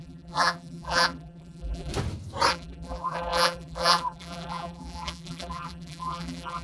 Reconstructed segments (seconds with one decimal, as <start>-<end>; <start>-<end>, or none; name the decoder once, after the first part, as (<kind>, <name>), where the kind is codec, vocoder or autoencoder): 0.0-1.9 (vocoder, BigVGAN v2); 2.5-6.6